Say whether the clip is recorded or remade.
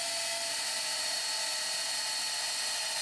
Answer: recorded